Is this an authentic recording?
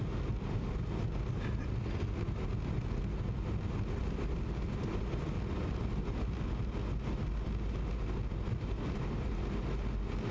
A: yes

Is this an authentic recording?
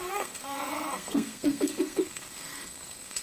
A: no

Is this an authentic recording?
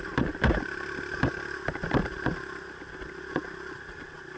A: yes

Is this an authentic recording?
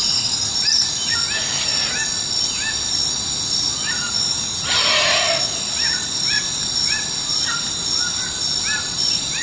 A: yes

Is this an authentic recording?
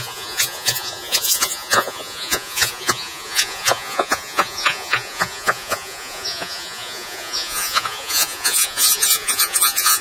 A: no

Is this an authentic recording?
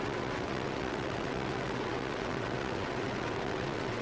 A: no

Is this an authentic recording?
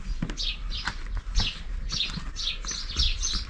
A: yes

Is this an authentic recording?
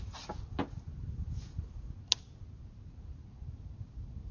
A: yes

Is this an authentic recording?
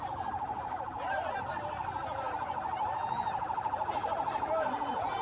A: no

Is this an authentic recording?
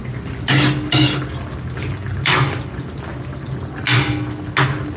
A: yes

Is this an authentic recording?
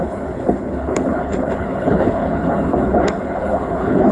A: no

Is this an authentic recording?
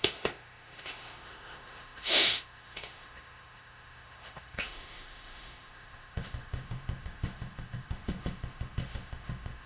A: no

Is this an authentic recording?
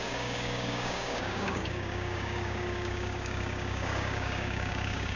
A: no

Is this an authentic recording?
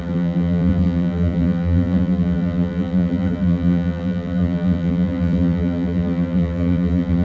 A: no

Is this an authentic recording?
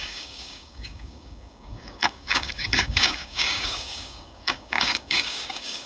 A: no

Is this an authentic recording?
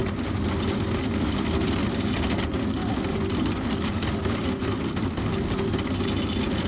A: yes